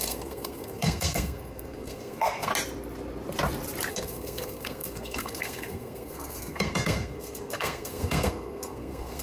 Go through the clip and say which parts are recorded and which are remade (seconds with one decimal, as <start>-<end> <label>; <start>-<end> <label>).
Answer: 0.0-2.5 remade; 2.5-3.9 recorded; 3.9-9.2 remade